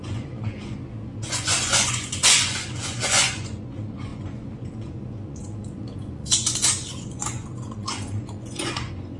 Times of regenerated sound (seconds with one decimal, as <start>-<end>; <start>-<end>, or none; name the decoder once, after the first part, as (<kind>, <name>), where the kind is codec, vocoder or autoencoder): 0.0-9.2 (vocoder, Vocos)